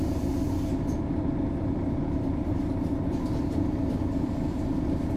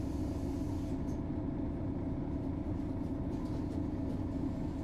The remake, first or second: first